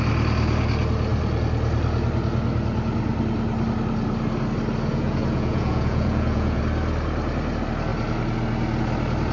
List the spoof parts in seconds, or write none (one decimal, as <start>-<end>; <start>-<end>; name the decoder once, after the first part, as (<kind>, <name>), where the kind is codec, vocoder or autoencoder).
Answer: 4.9-6.6 (vocoder, Vocos)